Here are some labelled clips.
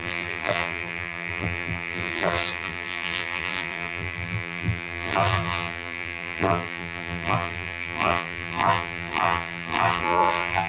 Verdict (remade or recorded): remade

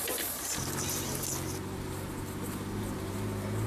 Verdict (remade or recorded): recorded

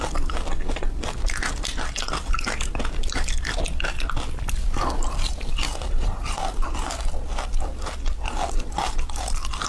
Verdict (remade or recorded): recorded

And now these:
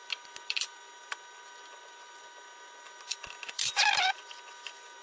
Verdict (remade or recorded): remade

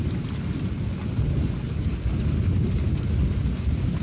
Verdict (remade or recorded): recorded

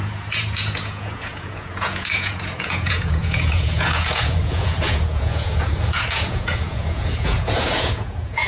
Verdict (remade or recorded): remade